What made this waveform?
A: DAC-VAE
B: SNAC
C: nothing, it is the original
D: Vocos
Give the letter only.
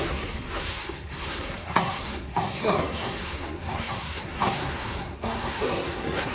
B